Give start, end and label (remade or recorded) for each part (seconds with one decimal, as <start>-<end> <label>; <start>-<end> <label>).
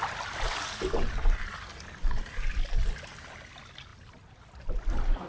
0.0-5.3 recorded